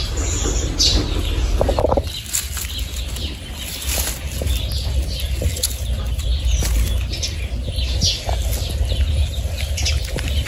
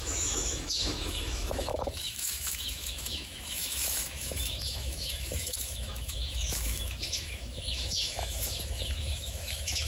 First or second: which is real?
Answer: first